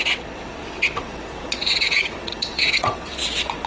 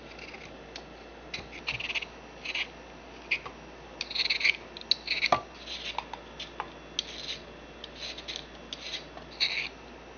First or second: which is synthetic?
first